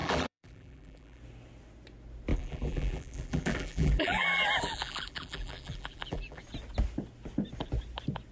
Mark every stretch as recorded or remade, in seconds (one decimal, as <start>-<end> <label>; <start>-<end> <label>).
0.0-1.2 remade; 1.2-2.3 recorded; 2.3-6.4 remade; 6.4-8.3 recorded